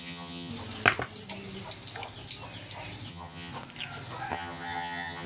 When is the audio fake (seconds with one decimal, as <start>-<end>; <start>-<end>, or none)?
0.0-0.5; 3.1-3.5; 4.3-5.3